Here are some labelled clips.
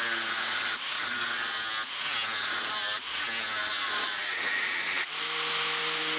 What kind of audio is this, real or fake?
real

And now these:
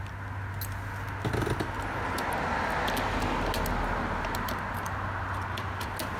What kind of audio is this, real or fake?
real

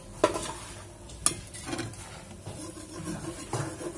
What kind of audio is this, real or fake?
real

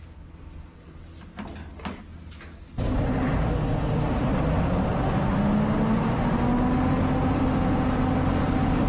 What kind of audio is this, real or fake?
real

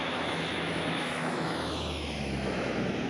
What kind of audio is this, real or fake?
fake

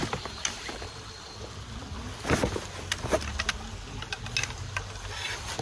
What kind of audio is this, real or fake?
real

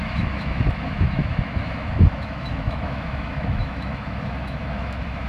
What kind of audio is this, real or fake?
fake